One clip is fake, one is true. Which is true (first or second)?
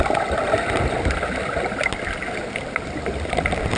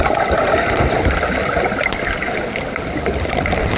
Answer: first